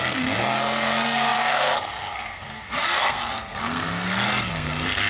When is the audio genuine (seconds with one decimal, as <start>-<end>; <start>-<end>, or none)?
none